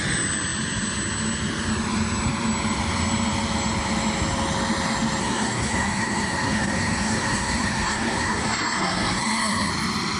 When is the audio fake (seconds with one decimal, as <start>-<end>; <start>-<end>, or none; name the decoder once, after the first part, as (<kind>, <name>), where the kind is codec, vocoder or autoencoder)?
5.2-9.7 (codec, SNAC)

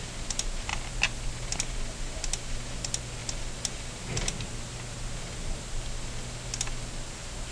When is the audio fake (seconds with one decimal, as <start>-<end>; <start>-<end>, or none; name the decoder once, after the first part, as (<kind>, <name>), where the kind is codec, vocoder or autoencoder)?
none

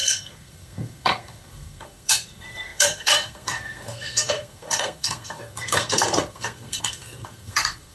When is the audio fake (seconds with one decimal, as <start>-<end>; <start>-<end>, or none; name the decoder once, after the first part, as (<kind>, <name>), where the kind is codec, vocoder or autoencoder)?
0.0-7.9 (codec, SNAC)

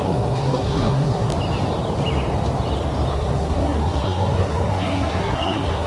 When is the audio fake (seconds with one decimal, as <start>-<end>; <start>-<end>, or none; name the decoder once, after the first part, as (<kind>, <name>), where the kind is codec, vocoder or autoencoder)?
0.0-1.3 (codec, SNAC); 3.1-5.9

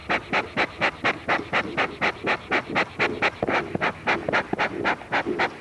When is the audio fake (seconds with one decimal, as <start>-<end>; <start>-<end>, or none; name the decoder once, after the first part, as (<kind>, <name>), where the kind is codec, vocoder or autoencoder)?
none

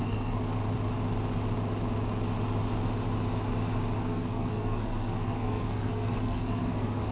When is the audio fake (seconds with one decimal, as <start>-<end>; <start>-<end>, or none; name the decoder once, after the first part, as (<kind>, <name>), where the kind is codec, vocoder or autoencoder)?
0.0-0.6 (codec, SNAC); 4.0-7.1